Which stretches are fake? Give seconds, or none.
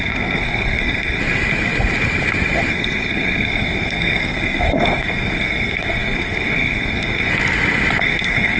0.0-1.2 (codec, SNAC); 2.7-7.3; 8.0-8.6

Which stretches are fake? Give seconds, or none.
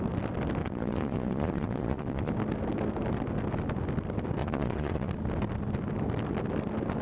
0.6-2.3 (vocoder, Vocos); 4.4-5.1